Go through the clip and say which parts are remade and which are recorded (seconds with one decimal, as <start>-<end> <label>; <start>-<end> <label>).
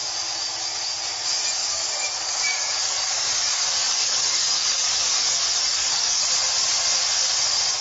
0.0-1.6 recorded; 1.6-6.3 remade; 6.3-7.8 recorded